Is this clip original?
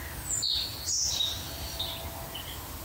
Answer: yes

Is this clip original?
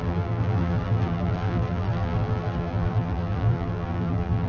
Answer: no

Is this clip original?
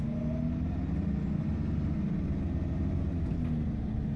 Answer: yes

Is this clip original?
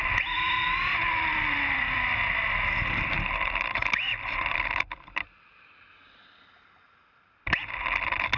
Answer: no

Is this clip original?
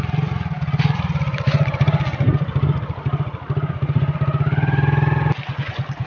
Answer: yes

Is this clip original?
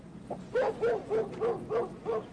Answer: yes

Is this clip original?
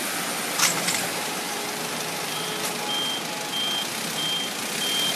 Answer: yes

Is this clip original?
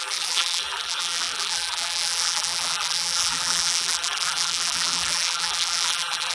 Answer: no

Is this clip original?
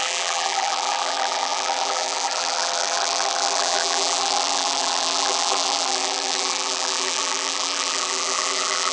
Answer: no